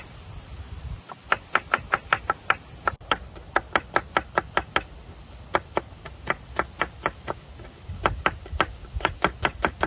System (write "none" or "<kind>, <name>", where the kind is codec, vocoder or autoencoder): none